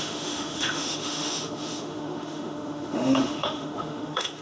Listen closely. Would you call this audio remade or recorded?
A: remade